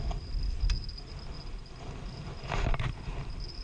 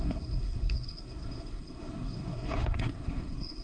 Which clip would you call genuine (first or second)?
first